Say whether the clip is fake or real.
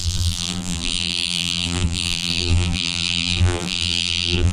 fake